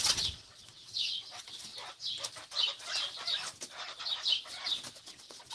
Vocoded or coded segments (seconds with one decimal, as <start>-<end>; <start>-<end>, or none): 0.0-1.7; 5.0-5.5